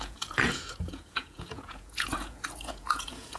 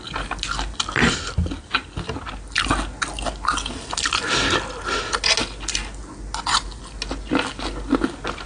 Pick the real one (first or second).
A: second